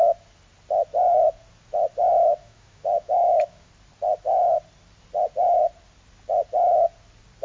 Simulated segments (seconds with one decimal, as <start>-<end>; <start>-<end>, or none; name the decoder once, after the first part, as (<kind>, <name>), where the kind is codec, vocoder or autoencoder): 2.4-3.7 (autoencoder, DAC-VAE)